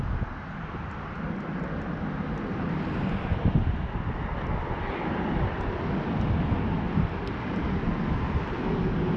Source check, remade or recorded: recorded